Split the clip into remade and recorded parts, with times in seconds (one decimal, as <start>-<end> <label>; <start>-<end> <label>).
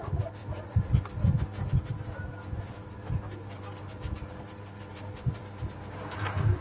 0.0-6.6 recorded